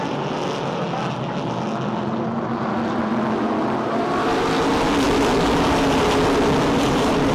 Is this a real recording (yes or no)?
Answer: yes